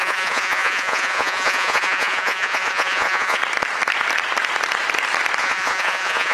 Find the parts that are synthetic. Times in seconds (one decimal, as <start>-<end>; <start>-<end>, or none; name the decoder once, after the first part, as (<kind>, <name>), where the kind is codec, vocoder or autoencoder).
0.0-3.4 (vocoder, Vocos); 5.4-6.3